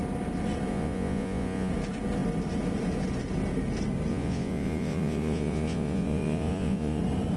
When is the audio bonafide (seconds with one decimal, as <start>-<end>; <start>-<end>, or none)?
0.0-0.7; 1.7-4.1; 7.0-7.4